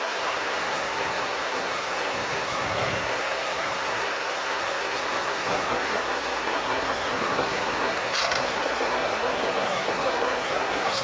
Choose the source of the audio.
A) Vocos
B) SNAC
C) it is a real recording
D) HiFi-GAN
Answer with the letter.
B